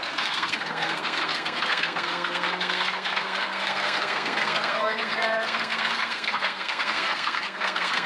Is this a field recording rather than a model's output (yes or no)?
no